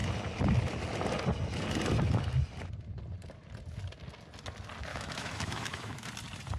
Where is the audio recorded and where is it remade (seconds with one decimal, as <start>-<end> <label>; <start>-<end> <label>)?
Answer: 0.0-4.9 recorded; 4.9-6.1 remade; 6.1-6.6 recorded